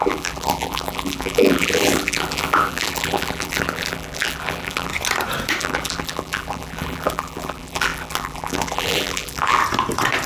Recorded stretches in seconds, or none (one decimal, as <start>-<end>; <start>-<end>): 4.9-5.6; 9.6-10.3